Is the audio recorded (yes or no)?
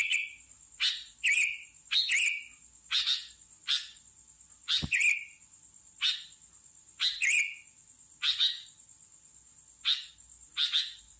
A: yes